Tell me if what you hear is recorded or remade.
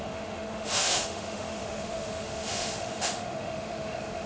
remade